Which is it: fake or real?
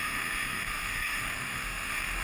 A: fake